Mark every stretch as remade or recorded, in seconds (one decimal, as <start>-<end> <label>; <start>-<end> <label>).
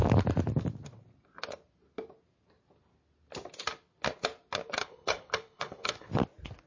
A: 0.0-4.8 recorded; 4.8-6.1 remade; 6.1-6.7 recorded